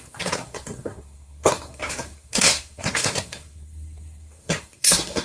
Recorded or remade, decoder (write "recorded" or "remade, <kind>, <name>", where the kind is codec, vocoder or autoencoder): remade, codec, SNAC